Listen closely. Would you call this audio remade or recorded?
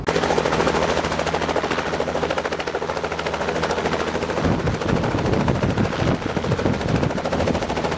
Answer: recorded